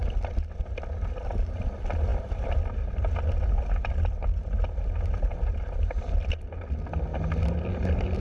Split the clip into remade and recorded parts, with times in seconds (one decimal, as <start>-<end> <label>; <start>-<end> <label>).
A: 0.0-8.2 recorded